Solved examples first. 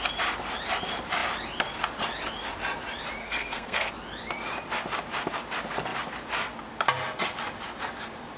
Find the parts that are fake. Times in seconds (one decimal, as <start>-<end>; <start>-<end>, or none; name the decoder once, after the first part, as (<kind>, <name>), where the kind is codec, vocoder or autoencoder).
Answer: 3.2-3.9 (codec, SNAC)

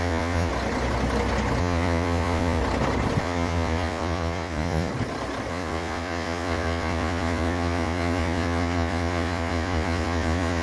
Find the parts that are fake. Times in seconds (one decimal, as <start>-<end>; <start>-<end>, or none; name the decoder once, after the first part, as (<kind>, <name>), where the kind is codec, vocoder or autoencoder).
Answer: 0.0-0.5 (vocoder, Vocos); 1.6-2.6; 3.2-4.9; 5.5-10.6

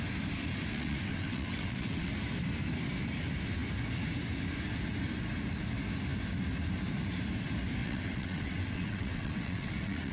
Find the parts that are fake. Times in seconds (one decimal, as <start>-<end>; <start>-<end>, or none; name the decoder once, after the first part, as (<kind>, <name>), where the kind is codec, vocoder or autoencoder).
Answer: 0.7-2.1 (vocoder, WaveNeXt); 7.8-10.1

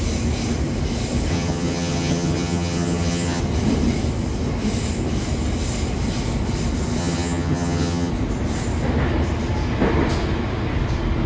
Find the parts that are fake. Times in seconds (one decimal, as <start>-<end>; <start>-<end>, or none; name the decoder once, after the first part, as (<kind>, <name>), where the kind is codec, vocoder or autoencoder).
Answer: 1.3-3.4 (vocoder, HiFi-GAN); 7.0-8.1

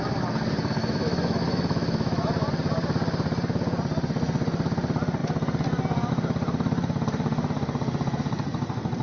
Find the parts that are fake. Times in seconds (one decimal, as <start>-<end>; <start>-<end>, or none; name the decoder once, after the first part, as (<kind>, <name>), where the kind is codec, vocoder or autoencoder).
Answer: 0.8-2.5 (autoencoder, DAC-VAE)

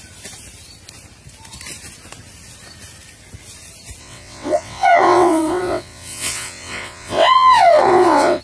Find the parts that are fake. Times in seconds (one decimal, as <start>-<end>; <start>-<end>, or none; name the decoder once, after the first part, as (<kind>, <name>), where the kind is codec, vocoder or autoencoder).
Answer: 4.0-8.4 (vocoder, WaveNeXt)

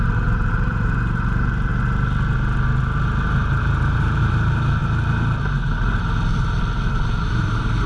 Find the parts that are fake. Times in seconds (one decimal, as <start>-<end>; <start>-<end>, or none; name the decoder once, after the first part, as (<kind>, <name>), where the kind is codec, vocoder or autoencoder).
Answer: 0.0-1.7 (vocoder, BigVGAN v2); 3.6-4.8; 7.2-7.9